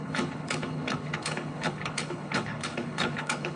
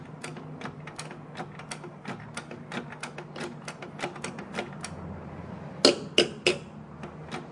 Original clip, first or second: second